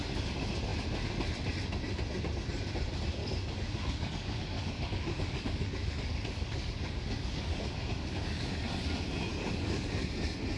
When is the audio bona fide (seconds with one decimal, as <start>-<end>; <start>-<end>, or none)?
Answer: 0.0-3.2; 8.5-9.3; 9.9-10.6